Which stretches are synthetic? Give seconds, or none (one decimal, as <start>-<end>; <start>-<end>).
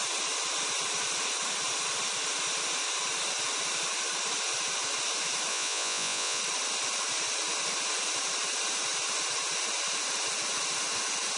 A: 5.5-6.4